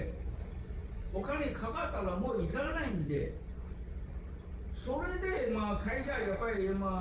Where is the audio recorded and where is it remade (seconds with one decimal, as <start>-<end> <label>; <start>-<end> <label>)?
0.0-0.8 recorded; 0.8-1.4 remade; 1.4-2.5 recorded; 2.5-3.8 remade; 3.8-7.0 recorded